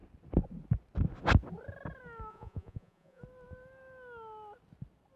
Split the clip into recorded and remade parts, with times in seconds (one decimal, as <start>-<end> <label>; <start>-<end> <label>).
0.0-2.3 recorded; 2.3-3.2 remade; 3.2-5.2 recorded